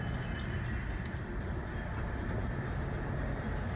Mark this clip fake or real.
real